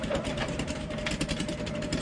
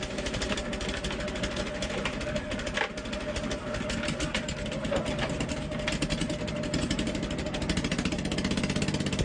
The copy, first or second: first